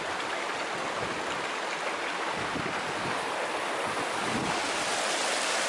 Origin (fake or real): real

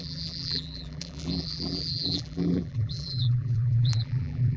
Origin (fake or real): fake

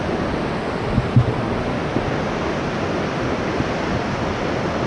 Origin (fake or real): real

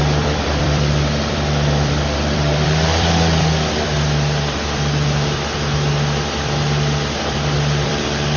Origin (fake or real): fake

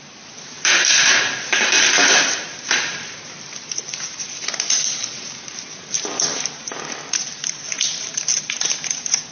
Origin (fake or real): fake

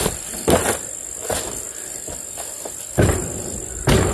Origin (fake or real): real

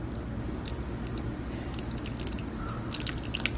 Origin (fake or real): real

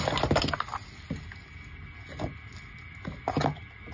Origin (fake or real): real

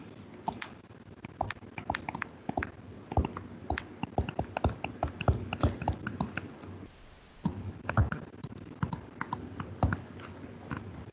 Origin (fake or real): real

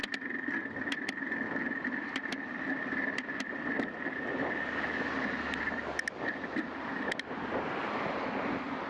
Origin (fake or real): real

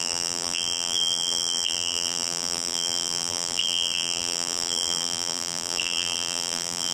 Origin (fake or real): fake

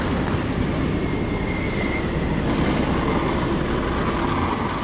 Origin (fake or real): real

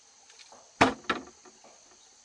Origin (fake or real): real